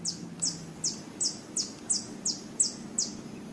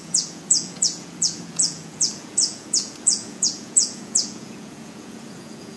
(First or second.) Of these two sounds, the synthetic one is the second